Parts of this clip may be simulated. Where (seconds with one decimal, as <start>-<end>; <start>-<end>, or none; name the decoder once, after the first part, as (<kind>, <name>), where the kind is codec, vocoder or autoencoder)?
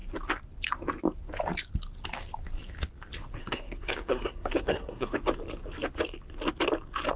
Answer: 3.4-5.1 (codec, SNAC)